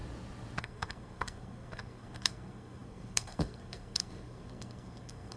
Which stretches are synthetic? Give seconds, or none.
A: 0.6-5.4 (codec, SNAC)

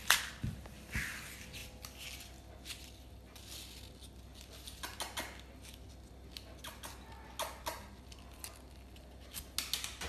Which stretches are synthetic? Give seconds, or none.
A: none

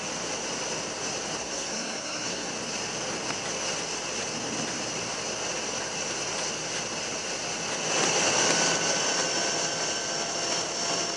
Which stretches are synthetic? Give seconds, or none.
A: 1.4-2.5 (codec, SNAC)

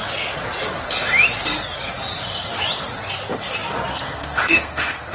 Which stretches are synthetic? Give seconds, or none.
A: 3.9-5.1 (codec, SNAC)

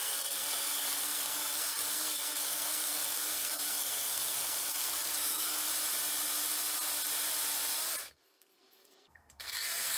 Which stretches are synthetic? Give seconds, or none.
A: 0.0-5.7 (codec, SNAC); 8.1-10.0